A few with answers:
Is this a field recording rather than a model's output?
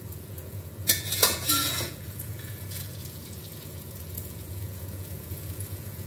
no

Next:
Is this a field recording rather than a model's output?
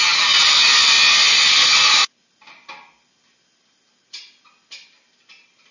yes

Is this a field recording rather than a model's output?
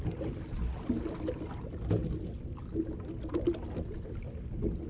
yes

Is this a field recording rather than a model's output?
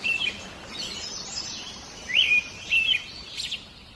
yes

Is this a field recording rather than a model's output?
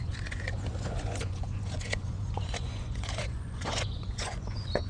no